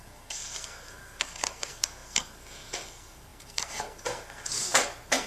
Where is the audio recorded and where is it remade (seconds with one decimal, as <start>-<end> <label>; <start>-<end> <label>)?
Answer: 0.0-5.3 remade